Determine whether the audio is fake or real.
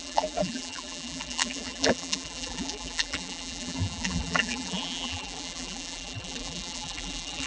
fake